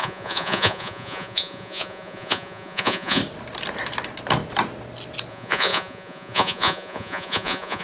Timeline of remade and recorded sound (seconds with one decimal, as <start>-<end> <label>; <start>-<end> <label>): 0.0-3.2 remade; 3.2-5.3 recorded; 5.3-7.8 remade